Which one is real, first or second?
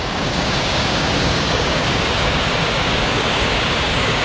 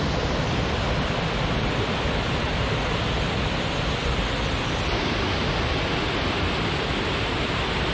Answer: second